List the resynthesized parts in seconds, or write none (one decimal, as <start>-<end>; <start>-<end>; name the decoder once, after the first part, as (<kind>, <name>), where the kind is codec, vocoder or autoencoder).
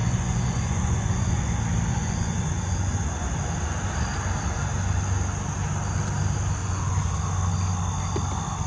0.0-1.5 (vocoder, Vocos); 1.9-3.3; 6.6-7.1